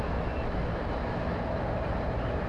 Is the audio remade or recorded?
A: recorded